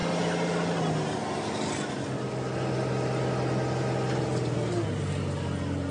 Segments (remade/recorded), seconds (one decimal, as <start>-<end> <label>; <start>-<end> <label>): 0.0-5.9 recorded